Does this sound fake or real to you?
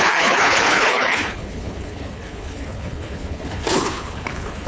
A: fake